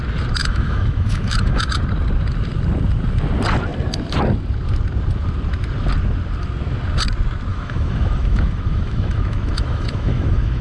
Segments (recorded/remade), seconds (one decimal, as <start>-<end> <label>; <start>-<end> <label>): 0.0-0.4 recorded; 0.4-1.8 remade; 1.8-7.5 recorded; 7.5-10.6 remade